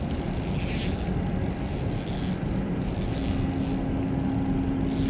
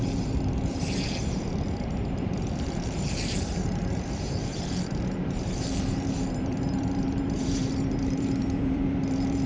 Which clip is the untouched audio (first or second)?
first